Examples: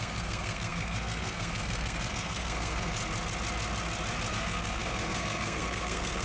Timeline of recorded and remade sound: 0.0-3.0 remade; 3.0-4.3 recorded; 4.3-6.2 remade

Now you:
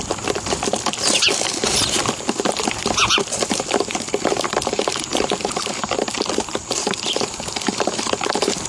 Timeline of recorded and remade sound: 0.0-8.7 remade

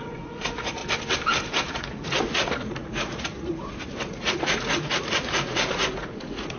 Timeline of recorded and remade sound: 0.0-0.8 remade; 0.8-1.7 recorded; 1.7-6.6 remade

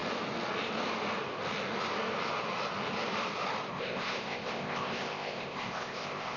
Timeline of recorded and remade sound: 0.0-3.7 recorded; 3.7-6.4 remade

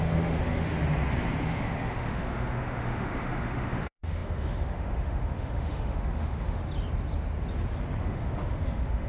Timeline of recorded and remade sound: 0.0-0.8 remade; 0.8-1.4 recorded; 1.4-6.6 remade; 6.6-8.0 recorded; 8.0-9.1 remade

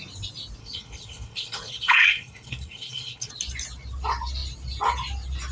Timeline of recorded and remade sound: 0.0-0.6 recorded; 0.6-3.3 remade; 3.3-5.5 recorded